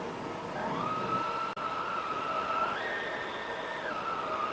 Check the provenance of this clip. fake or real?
real